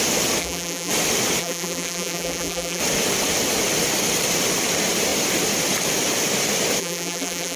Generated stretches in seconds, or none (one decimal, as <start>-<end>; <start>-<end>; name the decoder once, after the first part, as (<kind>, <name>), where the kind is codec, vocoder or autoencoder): 0.4-0.9 (vocoder, BigVGAN v2); 1.4-2.8; 6.8-7.6

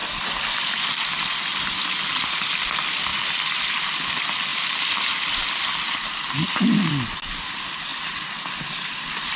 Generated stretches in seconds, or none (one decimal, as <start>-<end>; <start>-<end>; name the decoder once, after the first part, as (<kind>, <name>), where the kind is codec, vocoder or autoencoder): 0.0-2.3 (vocoder, BigVGAN v2); 3.1-3.8; 4.5-6.9; 7.9-9.4

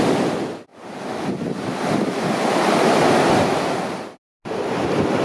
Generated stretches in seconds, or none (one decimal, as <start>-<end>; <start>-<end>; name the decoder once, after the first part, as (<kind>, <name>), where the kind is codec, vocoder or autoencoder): none

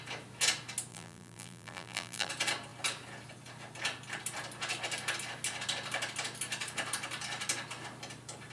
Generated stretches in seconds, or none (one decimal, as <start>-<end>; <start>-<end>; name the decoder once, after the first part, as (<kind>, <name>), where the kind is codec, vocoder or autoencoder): 0.9-2.3 (vocoder, BigVGAN v2)

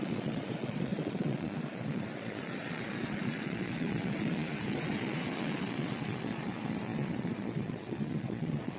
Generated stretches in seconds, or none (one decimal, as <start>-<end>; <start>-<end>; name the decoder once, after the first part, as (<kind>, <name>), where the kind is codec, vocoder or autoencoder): 0.0-8.8 (vocoder, Vocos)

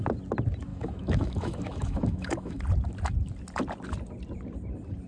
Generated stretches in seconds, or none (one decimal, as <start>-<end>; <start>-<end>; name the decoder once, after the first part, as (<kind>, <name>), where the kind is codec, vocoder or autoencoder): 0.7-2.6 (autoencoder, DAC-VAE)

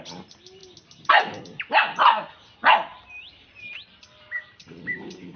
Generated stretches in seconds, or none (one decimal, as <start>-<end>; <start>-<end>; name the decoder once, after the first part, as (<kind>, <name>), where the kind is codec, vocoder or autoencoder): 0.0-0.6 (vocoder, BigVGAN v2); 1.4-5.4

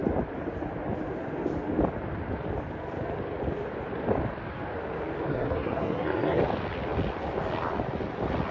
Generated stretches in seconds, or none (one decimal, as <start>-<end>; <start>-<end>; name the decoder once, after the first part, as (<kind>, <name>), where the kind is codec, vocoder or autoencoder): 5.3-6.4 (codec, SNAC)